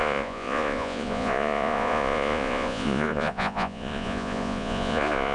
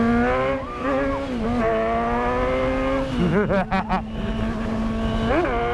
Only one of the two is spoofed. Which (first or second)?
first